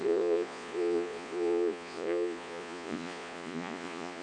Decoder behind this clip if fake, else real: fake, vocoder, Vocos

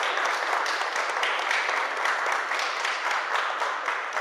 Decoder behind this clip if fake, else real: real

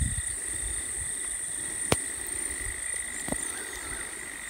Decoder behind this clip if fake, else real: real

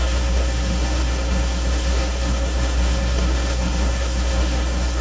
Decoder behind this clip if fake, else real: fake, codec, SNAC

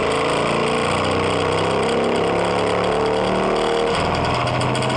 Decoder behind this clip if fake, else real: real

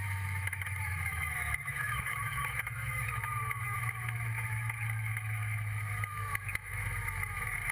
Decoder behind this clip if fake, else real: fake, autoencoder, DAC-VAE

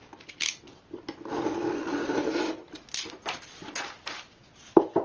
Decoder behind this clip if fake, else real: real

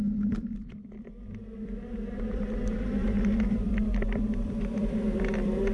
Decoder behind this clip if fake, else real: fake, vocoder, BigVGAN v2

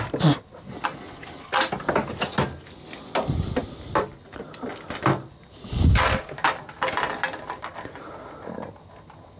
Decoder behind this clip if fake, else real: real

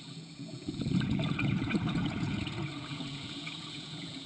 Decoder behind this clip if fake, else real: fake, vocoder, Vocos